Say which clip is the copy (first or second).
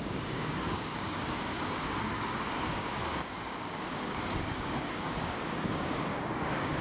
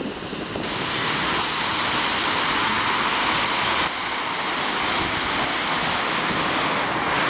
first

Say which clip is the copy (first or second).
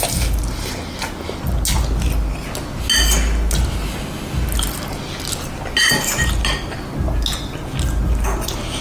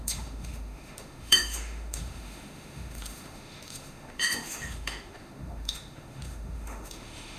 second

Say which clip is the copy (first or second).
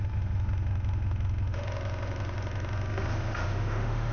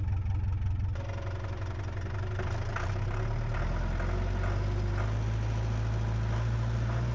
first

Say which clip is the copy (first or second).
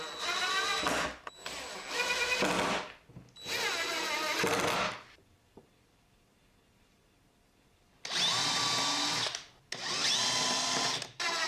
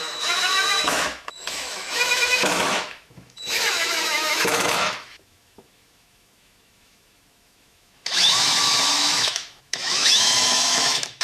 second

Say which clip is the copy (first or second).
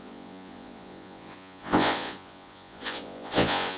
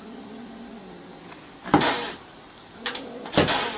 first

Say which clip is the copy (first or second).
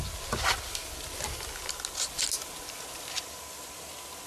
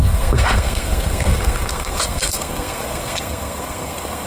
second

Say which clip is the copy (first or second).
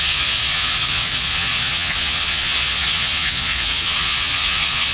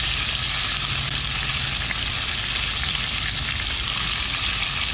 first